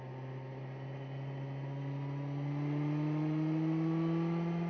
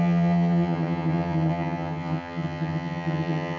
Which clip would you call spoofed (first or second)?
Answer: second